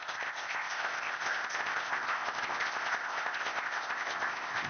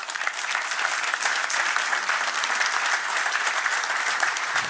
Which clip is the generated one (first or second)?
first